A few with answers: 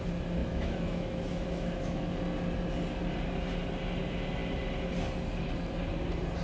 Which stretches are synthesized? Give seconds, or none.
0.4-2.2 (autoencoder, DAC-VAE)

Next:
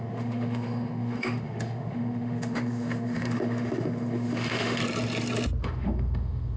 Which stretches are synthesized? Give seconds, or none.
0.0-4.8 (autoencoder, DAC-VAE); 5.6-6.6

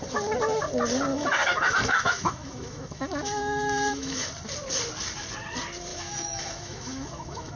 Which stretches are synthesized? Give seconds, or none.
1.1-4.3 (autoencoder, DAC-VAE); 5.9-7.6

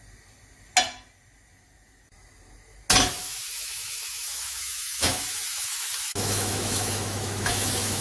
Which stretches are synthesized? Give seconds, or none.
3.2-8.0 (autoencoder, DAC-VAE)